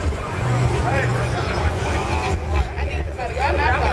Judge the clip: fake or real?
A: fake